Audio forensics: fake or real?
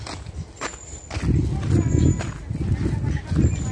real